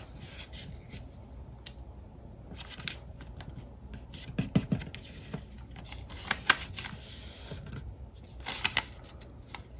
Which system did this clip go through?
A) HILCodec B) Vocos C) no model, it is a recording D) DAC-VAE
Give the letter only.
C